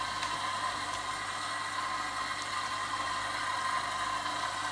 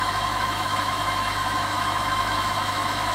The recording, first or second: first